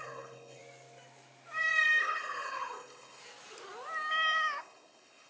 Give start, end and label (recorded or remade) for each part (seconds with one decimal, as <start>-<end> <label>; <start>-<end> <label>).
0.0-0.6 remade; 0.6-2.0 recorded; 2.0-3.2 remade; 3.2-4.6 recorded; 4.6-5.3 remade